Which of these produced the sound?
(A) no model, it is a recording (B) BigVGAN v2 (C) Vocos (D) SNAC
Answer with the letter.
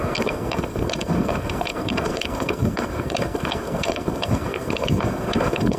D